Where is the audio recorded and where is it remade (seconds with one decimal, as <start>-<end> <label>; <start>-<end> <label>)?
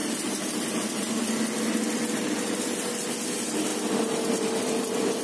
0.0-5.2 recorded